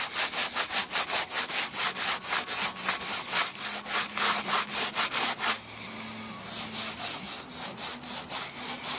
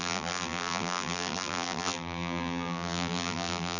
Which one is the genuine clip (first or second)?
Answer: first